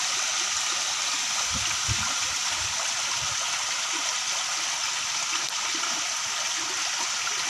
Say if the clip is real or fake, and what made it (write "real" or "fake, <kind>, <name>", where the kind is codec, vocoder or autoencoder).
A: real